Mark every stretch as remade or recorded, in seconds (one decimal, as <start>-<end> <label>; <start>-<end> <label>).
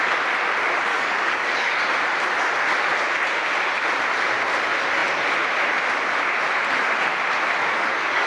0.0-0.9 recorded; 0.9-1.8 remade; 1.8-7.6 recorded; 7.6-8.3 remade